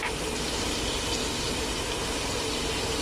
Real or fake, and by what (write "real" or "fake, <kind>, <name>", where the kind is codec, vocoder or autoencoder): real